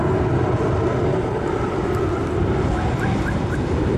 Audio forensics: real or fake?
real